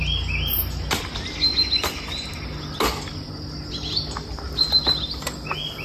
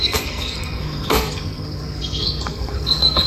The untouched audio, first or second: first